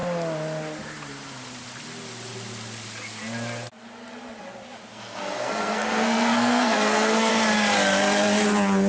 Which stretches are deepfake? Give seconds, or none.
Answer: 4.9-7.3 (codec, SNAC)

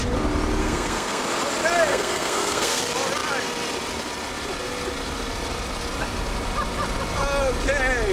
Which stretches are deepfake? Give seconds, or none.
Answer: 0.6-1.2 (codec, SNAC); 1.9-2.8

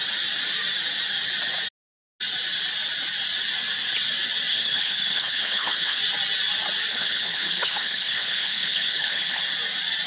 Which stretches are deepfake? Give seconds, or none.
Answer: 4.5-6.0 (codec, HILCodec); 6.9-9.4

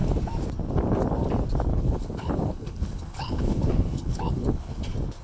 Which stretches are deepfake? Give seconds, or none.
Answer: 1.7-4.8 (codec, HILCodec)

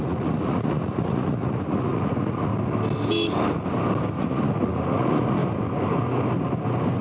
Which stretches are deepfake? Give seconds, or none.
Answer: 0.0-2.5 (vocoder, Vocos); 4.2-5.4

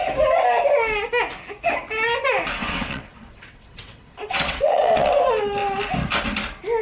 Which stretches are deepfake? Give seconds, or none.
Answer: 2.6-5.1 (vocoder, WaveNeXt)

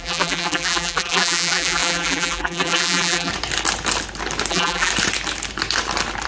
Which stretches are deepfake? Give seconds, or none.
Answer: 0.0-3.3 (vocoder, BigVGAN v2); 4.5-4.9